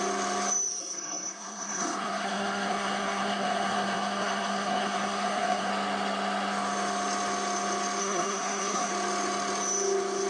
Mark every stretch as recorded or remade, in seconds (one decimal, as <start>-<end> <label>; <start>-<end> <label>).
0.0-0.8 recorded; 0.8-5.7 remade; 5.7-8.0 recorded; 8.0-8.9 remade; 8.9-10.3 recorded